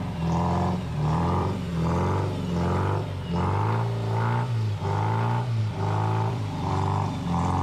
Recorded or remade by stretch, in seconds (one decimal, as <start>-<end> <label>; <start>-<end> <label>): 0.0-1.7 remade; 1.7-5.6 recorded; 5.6-7.6 remade